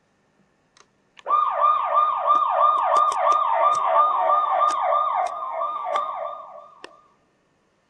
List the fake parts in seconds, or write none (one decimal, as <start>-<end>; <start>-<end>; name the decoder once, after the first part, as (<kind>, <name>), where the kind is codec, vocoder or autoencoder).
3.5-4.6 (codec, SNAC); 5.2-6.1